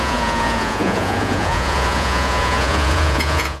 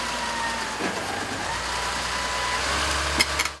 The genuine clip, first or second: second